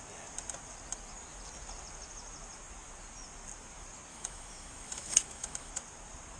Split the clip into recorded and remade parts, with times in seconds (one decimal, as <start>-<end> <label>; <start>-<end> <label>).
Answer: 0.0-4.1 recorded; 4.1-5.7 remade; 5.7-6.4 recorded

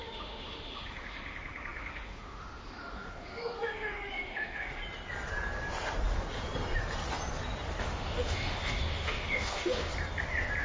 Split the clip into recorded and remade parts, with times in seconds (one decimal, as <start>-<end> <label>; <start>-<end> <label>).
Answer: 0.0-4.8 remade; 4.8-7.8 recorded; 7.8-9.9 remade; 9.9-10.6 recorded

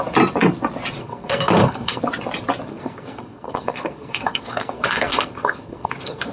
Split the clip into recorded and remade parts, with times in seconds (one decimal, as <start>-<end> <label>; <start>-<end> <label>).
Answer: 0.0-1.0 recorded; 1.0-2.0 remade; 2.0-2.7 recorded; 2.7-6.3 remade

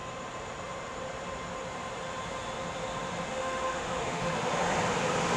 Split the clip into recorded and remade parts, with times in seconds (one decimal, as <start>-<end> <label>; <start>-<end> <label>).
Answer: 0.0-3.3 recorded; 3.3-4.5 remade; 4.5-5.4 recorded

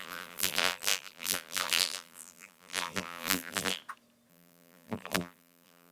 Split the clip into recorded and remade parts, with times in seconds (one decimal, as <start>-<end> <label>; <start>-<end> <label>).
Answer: 0.0-3.8 remade; 3.8-4.3 recorded; 4.3-5.9 remade

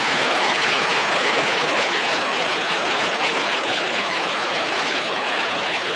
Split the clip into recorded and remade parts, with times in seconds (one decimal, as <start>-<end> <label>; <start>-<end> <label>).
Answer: 0.0-6.0 remade